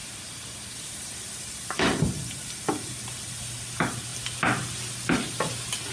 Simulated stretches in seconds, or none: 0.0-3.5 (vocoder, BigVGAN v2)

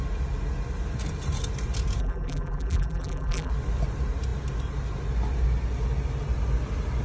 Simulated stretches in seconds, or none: 2.0-3.5 (vocoder, BigVGAN v2)

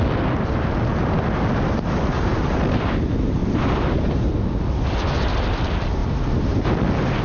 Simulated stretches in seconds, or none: 3.4-4.3 (vocoder, BigVGAN v2)

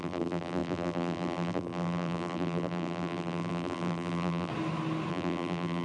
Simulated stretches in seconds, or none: 0.0-4.5 (vocoder, BigVGAN v2); 5.1-5.8

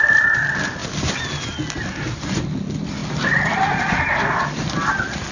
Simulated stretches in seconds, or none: 0.0-0.8 (vocoder, BigVGAN v2); 2.4-5.3

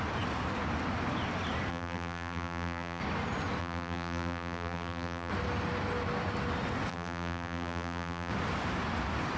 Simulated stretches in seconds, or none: 1.7-3.0 (vocoder, BigVGAN v2); 3.6-5.3; 6.9-8.3

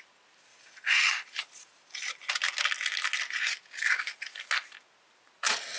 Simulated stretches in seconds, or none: 0.5-2.3 (vocoder, BigVGAN v2)